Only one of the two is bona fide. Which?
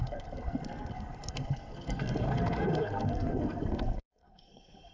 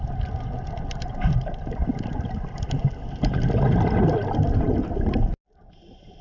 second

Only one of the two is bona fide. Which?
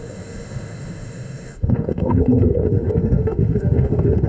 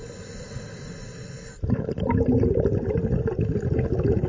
second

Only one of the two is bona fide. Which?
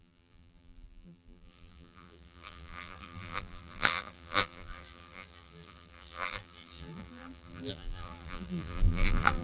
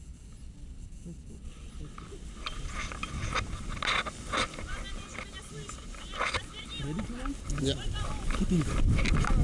second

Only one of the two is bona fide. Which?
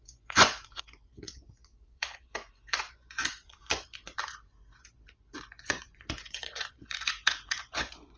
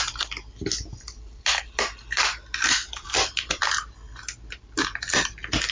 second